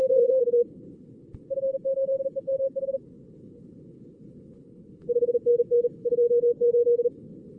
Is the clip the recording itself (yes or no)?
no